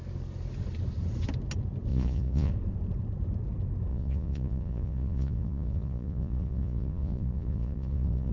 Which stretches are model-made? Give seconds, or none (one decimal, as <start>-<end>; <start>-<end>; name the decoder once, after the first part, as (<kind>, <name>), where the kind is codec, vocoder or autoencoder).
1.9-2.5 (vocoder, Vocos); 3.9-8.3